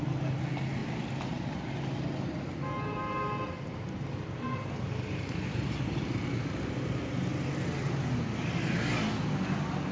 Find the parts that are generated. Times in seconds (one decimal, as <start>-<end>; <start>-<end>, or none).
none